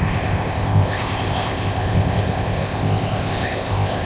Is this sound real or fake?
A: fake